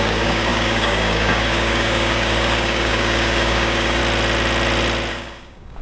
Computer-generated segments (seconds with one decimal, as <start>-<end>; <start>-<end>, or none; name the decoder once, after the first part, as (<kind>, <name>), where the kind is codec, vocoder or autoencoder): 0.0-4.0 (codec, DAC); 5.1-5.8